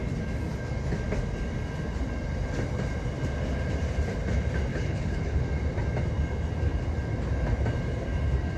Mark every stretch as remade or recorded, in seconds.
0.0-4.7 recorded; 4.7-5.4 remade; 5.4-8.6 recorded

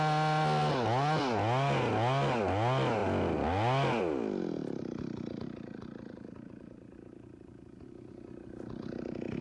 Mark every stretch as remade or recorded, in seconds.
0.0-9.4 recorded

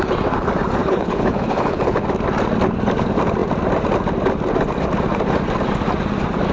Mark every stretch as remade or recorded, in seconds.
0.0-0.8 recorded; 0.8-2.0 remade; 2.0-6.5 recorded

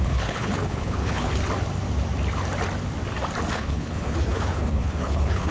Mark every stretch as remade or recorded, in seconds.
0.0-1.3 remade; 1.3-3.5 recorded; 3.5-5.5 remade

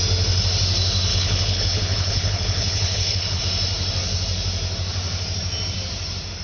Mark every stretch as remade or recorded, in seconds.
0.0-1.1 recorded; 1.1-3.4 remade; 3.4-6.4 recorded

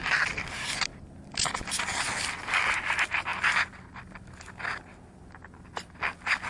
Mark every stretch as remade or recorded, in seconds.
0.0-6.5 recorded

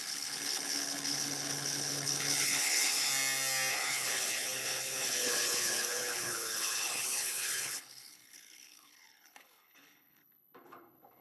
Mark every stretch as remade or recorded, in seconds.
0.0-3.1 remade; 3.1-3.7 recorded; 3.7-11.2 remade

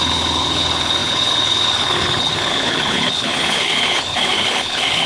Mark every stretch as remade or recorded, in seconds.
0.0-5.1 remade